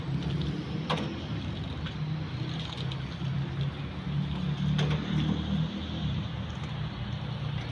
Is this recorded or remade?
recorded